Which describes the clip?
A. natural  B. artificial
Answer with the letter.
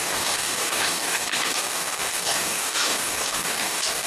B